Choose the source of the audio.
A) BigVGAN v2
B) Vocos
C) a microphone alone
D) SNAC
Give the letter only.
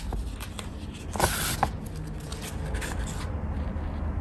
C